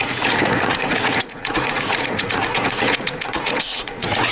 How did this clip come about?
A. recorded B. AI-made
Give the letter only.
B